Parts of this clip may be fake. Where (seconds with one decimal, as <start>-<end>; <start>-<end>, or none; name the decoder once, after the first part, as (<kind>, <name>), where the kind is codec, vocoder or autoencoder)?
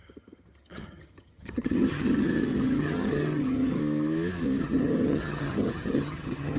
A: 0.0-3.8 (vocoder, HiFi-GAN); 4.6-6.6